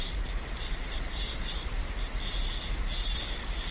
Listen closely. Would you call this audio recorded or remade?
remade